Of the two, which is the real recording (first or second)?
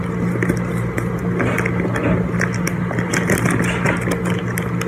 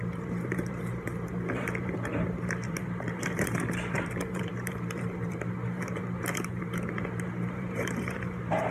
first